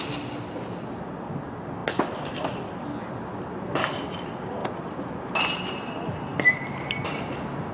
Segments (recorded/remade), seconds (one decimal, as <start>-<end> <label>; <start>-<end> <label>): 0.0-7.7 recorded